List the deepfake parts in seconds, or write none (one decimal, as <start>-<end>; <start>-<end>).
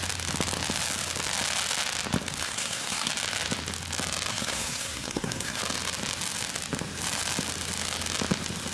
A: 2.4-3.1; 4.3-5.6